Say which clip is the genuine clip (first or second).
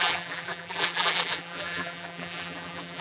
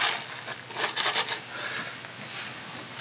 second